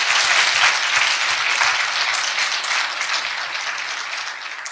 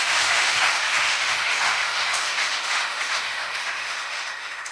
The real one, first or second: first